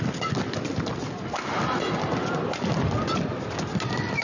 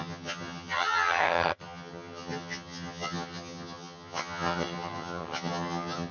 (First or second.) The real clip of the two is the first